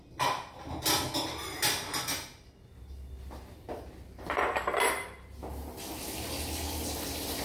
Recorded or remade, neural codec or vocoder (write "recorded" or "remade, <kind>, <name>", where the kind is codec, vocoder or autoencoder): recorded